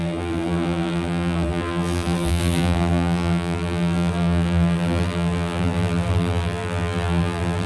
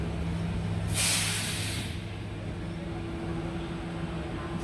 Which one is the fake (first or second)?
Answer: first